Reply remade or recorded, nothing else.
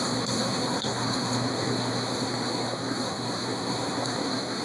remade